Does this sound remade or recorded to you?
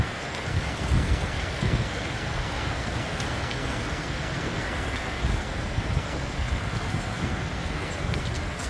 remade